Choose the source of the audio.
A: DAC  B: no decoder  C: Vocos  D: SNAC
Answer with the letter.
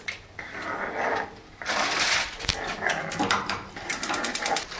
B